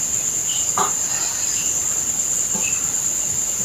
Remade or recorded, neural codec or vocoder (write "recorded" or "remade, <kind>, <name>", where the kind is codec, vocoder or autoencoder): recorded